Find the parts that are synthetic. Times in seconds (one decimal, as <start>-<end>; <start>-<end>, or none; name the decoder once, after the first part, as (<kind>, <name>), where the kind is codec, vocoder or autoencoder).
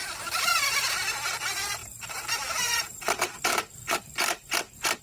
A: 0.0-0.6 (vocoder, BigVGAN v2); 1.8-5.0